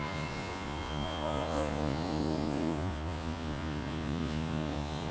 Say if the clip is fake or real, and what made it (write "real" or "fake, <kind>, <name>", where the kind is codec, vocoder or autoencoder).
fake, vocoder, Vocos